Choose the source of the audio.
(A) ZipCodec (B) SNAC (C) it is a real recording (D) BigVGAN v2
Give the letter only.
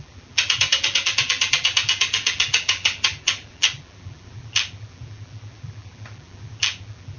D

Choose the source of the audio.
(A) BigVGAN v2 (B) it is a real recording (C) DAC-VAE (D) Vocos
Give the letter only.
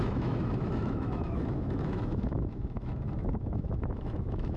C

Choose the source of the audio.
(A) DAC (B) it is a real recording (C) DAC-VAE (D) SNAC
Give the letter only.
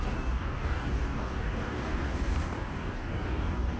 A